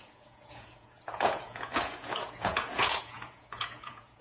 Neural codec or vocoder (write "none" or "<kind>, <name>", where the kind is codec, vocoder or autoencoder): vocoder, Vocos